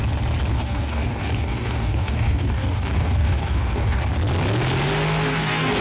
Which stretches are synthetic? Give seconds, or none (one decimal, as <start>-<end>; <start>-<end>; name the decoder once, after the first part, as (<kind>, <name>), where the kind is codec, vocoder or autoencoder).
0.5-4.0 (codec, DAC); 5.3-5.8